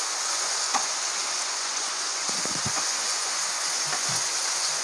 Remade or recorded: remade